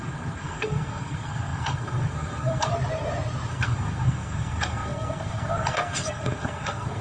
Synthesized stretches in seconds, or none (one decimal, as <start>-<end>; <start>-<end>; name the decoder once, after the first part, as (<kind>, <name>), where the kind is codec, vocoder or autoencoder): 0.0-2.7 (codec, SNAC); 3.5-7.0